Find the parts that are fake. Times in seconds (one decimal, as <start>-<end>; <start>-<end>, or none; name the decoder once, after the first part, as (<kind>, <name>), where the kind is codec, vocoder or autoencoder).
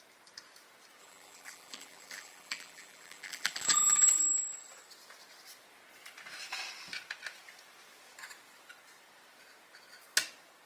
1.0-4.2 (vocoder, BigVGAN v2)